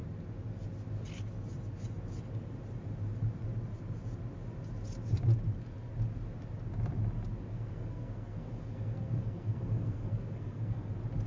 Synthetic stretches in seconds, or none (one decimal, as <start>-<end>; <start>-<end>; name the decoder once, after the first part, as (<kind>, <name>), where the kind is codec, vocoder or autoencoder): 7.5-10.9 (codec, SNAC)